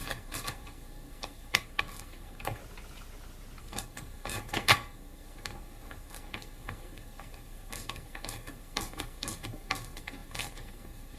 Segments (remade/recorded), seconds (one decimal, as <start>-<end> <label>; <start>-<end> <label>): 0.0-2.6 remade; 2.6-3.6 recorded; 3.6-11.2 remade